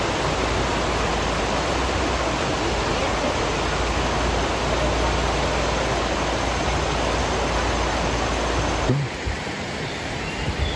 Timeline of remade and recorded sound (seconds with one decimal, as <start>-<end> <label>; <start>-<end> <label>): 0.0-10.8 recorded